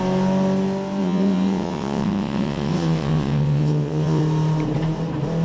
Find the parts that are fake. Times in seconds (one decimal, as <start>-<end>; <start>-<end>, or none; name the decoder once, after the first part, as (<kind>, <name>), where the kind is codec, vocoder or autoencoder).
1.0-4.2 (vocoder, WaveNeXt)